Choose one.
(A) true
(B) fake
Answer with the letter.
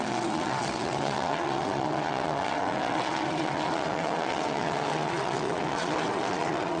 B